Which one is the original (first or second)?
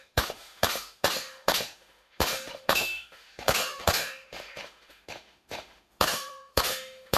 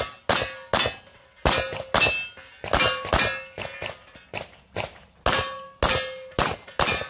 second